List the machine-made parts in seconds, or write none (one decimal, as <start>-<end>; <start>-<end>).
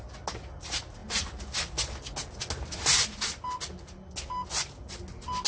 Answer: none